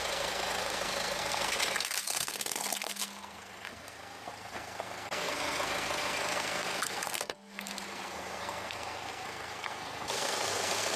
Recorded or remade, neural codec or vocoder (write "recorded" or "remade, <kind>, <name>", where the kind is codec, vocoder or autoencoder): remade, codec, SNAC